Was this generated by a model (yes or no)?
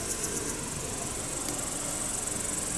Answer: no